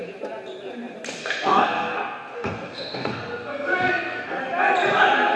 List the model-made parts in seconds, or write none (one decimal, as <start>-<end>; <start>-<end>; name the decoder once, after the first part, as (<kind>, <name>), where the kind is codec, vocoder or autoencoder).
1.2-4.4 (codec, SNAC)